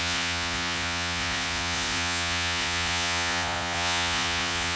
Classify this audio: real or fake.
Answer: fake